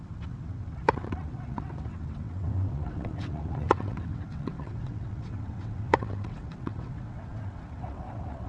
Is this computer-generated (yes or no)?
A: yes